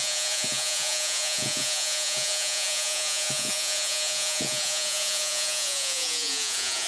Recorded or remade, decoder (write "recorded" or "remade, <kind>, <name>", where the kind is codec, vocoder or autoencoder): remade, vocoder, Vocos